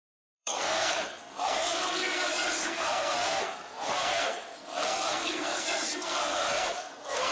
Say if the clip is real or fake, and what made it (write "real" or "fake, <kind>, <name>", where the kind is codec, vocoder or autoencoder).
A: fake, codec, SNAC